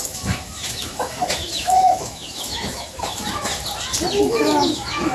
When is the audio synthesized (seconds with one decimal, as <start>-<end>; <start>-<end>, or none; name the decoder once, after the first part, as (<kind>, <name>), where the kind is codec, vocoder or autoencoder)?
0.0-3.5 (autoencoder, DAC-VAE); 4.2-5.1